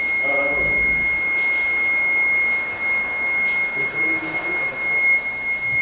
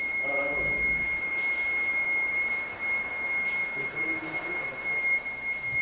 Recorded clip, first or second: first